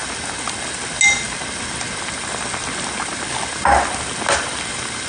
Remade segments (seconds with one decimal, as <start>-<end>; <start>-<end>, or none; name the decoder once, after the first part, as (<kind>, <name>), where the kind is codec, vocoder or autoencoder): none

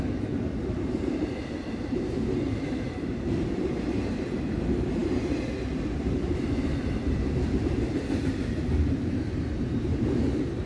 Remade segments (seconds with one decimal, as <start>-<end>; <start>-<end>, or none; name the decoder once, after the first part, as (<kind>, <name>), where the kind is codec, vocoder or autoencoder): 0.0-10.7 (vocoder, BigVGAN v2)

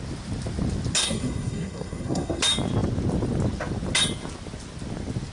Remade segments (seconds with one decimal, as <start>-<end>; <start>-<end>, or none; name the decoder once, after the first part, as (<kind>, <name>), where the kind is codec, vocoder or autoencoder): 1.0-2.4 (codec, SNAC)

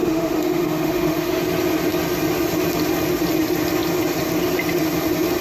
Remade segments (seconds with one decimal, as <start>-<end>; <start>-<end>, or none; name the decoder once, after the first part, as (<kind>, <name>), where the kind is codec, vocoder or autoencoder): 0.0-1.4 (autoencoder, DAC-VAE)